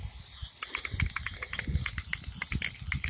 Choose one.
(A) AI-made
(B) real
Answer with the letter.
B